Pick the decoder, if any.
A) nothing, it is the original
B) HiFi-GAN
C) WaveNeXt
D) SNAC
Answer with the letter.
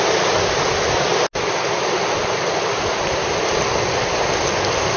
A